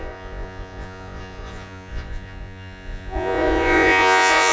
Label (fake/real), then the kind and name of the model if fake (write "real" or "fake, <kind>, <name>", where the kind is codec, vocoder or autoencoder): fake, vocoder, Vocos